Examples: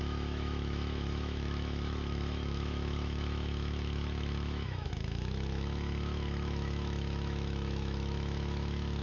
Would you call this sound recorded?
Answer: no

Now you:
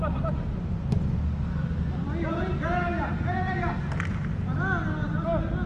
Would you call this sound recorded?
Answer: yes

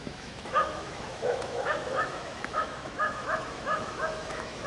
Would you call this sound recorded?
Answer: no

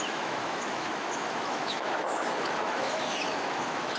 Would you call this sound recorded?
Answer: no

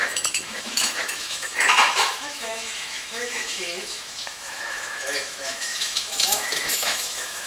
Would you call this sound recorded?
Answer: no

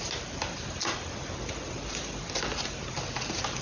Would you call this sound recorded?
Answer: yes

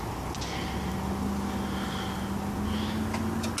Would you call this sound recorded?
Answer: yes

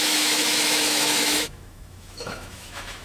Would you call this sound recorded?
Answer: no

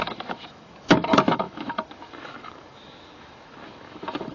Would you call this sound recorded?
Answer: no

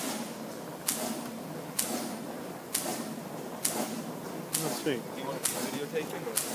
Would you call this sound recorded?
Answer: yes